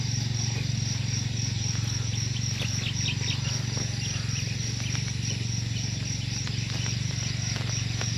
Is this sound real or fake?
real